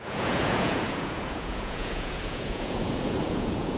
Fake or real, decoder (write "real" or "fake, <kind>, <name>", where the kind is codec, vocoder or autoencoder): fake, vocoder, Vocos